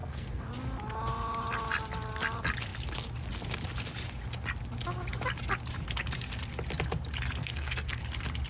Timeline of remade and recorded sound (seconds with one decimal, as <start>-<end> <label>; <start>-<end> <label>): 0.0-0.5 remade; 0.5-7.4 recorded; 7.4-8.0 remade; 8.0-8.5 recorded